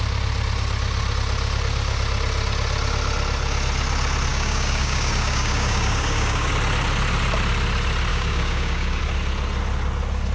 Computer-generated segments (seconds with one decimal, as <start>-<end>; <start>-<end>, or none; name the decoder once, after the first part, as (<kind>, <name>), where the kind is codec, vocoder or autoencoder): 4.3-6.5 (codec, DAC); 8.1-9.0